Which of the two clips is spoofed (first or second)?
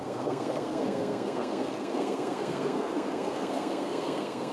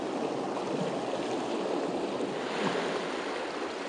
first